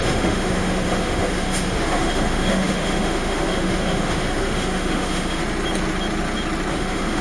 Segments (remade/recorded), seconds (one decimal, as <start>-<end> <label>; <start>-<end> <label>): 0.0-5.4 remade; 5.4-6.7 recorded; 6.7-7.2 remade